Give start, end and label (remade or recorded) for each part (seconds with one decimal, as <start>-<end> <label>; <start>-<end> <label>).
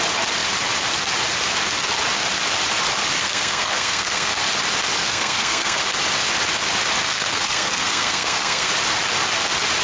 0.0-3.2 recorded; 3.2-4.4 remade; 4.4-5.0 recorded; 5.0-5.8 remade; 5.8-7.0 recorded; 7.0-8.7 remade; 8.7-9.8 recorded